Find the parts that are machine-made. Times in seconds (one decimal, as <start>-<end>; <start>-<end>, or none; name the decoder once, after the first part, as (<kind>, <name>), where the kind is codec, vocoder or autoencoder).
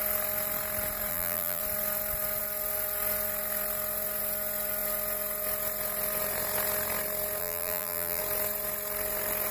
1.1-1.6 (vocoder, BigVGAN v2); 7.4-8.2